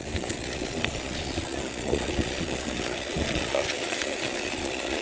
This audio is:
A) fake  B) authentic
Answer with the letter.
A